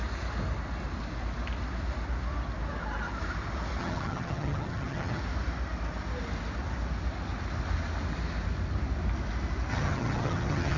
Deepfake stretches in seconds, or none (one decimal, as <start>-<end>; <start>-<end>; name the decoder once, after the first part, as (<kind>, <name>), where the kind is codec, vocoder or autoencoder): 3.8-5.2 (vocoder, HiFi-GAN); 9.7-10.8